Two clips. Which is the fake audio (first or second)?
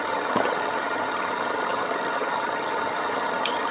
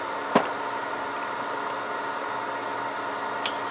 first